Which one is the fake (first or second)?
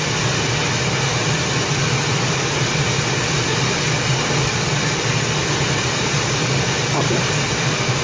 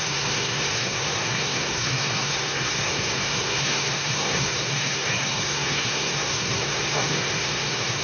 second